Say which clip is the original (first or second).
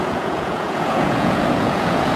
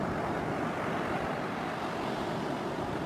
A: second